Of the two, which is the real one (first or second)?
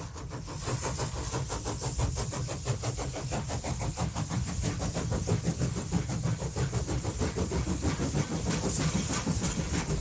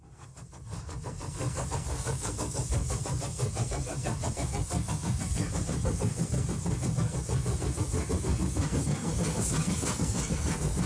first